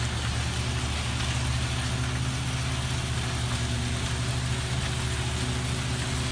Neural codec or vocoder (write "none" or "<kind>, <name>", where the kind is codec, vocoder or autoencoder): none